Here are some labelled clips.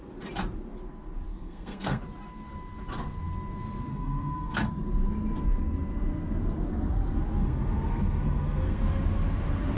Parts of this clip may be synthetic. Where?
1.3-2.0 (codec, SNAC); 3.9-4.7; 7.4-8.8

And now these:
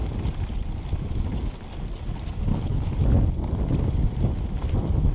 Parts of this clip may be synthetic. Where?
2.5-3.3 (codec, HILCodec)

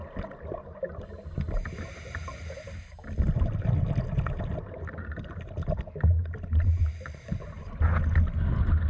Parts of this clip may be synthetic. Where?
6.8-7.4 (vocoder, BigVGAN v2)

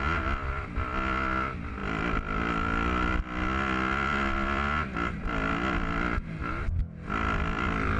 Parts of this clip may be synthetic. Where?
none

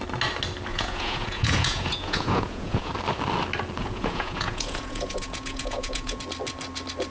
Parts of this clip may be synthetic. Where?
0.7-2.9 (vocoder, Vocos); 3.8-6.2

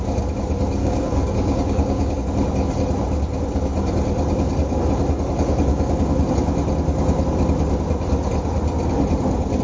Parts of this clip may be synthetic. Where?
0.8-2.2 (codec, DAC); 5.7-6.3